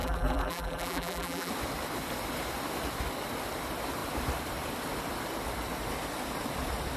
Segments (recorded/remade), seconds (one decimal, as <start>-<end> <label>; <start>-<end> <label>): 0.0-1.5 remade; 1.5-7.0 recorded